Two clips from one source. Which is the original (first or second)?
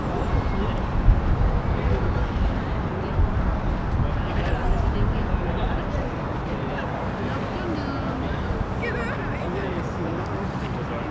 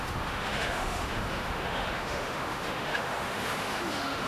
first